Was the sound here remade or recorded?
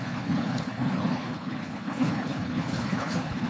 remade